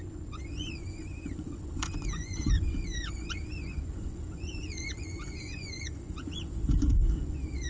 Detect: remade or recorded remade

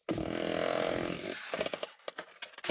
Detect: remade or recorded recorded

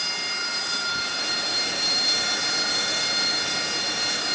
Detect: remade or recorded recorded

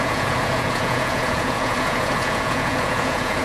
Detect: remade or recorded remade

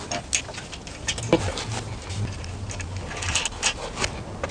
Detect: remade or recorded recorded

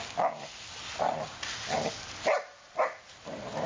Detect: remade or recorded recorded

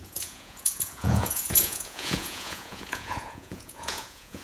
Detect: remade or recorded remade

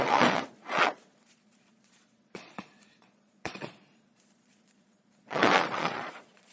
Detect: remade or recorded remade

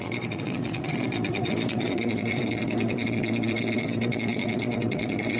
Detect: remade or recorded remade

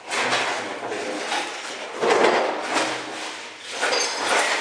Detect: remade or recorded recorded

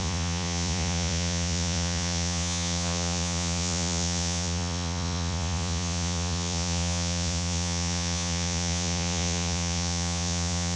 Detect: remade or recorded remade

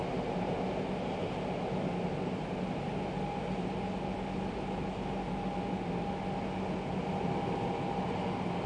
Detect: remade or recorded recorded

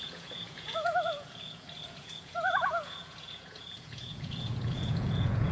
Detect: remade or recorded remade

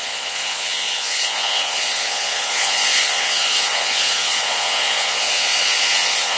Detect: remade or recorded remade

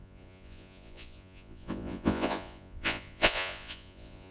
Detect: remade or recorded remade